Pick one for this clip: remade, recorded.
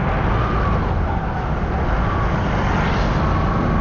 recorded